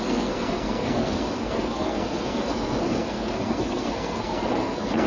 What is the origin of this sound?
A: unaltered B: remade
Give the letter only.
B